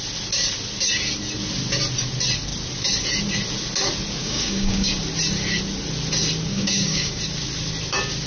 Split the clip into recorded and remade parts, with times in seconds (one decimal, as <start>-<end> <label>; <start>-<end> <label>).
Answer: 0.0-4.2 recorded; 4.2-4.9 remade; 4.9-6.5 recorded; 6.5-7.2 remade; 7.2-8.3 recorded